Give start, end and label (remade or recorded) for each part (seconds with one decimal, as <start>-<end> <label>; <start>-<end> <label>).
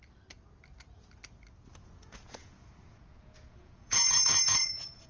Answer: 0.0-1.7 recorded; 1.7-5.1 remade